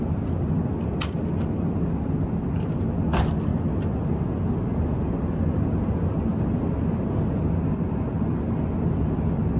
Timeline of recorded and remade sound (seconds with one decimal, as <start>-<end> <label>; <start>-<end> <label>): 0.0-9.6 recorded